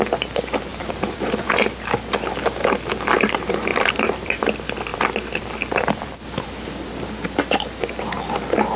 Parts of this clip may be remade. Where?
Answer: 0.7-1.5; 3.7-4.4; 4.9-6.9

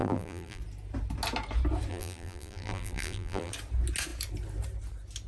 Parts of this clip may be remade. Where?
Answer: 0.0-0.6; 1.9-3.5